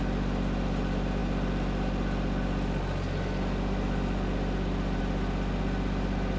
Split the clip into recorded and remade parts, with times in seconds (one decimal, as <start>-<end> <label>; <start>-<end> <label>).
0.0-6.4 recorded